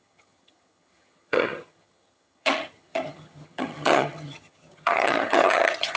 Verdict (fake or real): fake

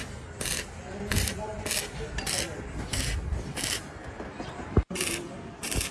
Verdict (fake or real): real